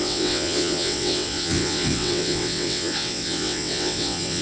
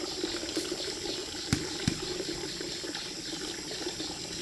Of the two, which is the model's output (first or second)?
first